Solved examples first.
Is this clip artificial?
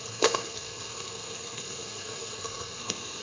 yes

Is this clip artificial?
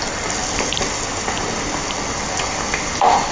no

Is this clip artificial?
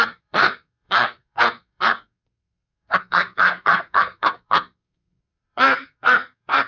yes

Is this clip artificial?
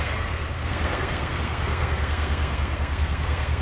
yes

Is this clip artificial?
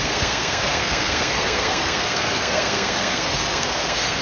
yes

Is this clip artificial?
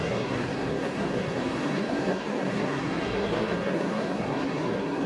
yes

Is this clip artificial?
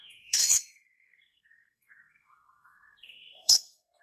yes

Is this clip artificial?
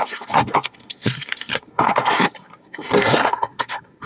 yes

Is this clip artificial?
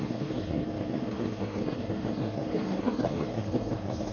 yes